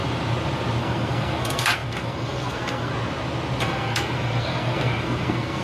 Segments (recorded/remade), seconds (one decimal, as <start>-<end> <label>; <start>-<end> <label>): 0.0-0.8 recorded; 0.8-2.9 remade; 2.9-3.6 recorded; 3.6-5.6 remade